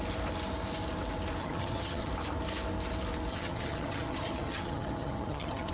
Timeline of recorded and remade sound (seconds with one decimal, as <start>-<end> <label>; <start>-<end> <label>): 0.0-1.4 recorded; 1.4-2.1 remade; 2.1-3.3 recorded; 3.3-5.7 remade